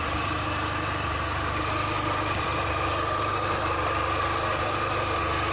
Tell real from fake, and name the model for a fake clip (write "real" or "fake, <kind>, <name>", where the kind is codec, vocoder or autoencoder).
real